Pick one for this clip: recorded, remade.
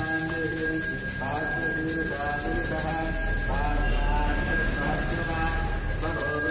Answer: recorded